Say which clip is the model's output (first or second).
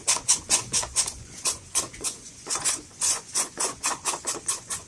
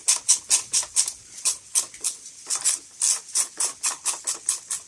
first